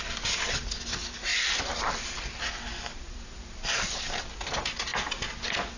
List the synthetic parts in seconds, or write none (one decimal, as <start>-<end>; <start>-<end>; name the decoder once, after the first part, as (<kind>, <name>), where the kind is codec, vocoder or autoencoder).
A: 1.3-2.5 (vocoder, BigVGAN v2); 2.9-4.2